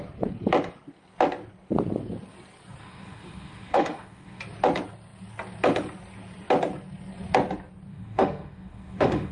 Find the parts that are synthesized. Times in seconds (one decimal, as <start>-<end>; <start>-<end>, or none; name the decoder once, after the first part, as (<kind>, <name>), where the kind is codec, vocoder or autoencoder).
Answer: 2.8-4.4 (autoencoder, DAC-VAE); 7.9-9.3